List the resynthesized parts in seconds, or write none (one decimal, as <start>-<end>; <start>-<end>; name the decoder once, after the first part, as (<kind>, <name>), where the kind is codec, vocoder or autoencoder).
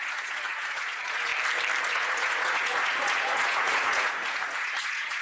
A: 0.0-1.3 (vocoder, Vocos); 1.8-5.2